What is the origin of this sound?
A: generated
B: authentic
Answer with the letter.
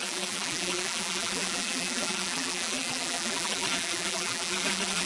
A